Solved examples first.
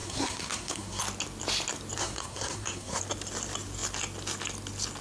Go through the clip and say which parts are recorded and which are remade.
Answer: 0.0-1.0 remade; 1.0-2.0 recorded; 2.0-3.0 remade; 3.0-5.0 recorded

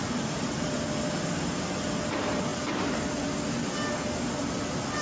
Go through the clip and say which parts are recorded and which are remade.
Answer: 0.0-5.0 recorded

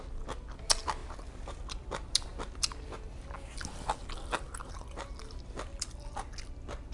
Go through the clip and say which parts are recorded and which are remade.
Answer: 0.0-6.9 recorded

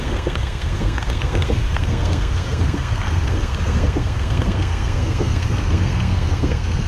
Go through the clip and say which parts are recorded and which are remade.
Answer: 0.0-6.9 remade

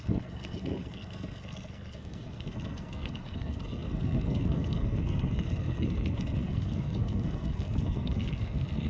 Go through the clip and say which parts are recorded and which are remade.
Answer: 0.0-8.9 remade

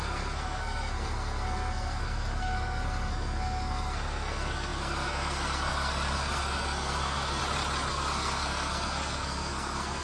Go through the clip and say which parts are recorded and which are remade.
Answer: 0.0-7.4 remade; 7.4-7.9 recorded; 7.9-10.0 remade

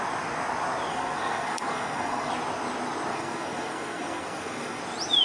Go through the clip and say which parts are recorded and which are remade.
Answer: 0.0-0.9 recorded; 0.9-2.3 remade; 2.3-3.1 recorded; 3.1-4.8 remade; 4.8-5.2 recorded